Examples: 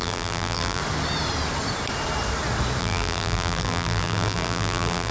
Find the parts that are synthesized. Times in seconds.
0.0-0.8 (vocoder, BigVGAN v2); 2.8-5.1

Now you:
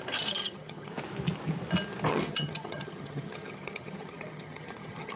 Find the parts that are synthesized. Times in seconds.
0.4-0.9 (vocoder, HiFi-GAN); 2.1-5.2

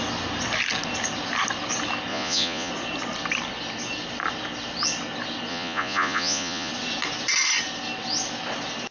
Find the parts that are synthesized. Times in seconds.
2.1-2.7 (vocoder, Vocos); 5.5-6.7